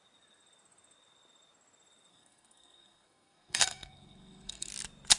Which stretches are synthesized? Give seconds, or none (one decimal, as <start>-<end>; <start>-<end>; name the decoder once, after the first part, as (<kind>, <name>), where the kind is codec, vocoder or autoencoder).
2.1-4.7 (codec, SNAC)